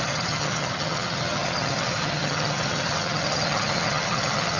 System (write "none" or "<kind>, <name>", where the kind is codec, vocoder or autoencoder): vocoder, HiFi-GAN